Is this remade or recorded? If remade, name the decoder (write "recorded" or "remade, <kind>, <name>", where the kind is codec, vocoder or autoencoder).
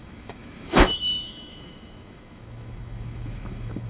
remade, autoencoder, DAC-VAE